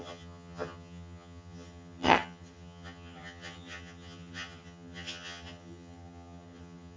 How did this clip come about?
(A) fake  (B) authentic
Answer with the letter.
A